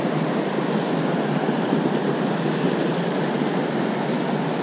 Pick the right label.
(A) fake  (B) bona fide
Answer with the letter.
B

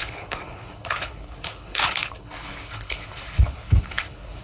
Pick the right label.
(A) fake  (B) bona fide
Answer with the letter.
A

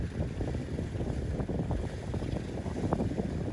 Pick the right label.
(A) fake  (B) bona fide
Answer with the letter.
B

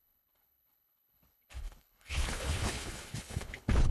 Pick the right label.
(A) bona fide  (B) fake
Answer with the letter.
B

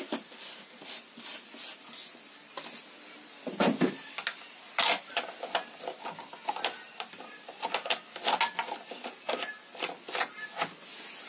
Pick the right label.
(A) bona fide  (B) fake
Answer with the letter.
A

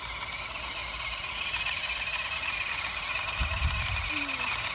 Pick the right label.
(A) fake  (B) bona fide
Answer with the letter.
B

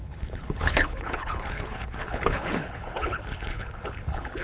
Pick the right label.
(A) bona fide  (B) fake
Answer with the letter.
B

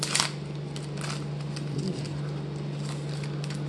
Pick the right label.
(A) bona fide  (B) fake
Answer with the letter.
A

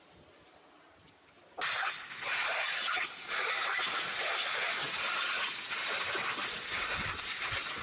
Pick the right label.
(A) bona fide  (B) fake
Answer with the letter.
A